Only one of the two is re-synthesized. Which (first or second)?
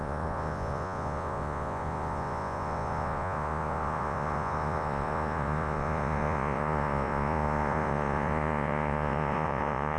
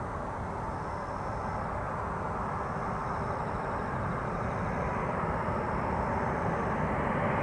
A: first